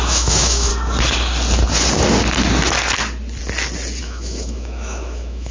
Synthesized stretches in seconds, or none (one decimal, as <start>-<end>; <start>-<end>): 0.0-0.7; 4.0-5.5